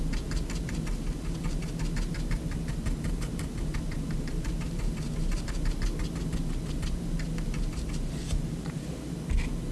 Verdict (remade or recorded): recorded